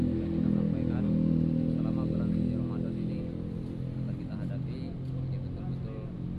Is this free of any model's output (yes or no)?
yes